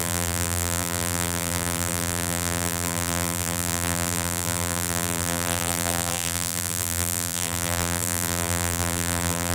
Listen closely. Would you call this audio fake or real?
fake